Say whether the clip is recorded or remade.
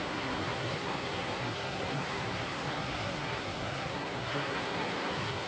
remade